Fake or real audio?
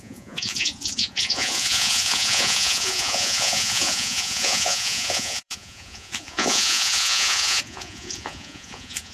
fake